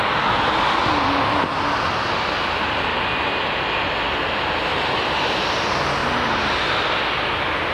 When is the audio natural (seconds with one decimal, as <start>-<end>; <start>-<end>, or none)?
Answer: 0.0-6.0; 6.6-7.7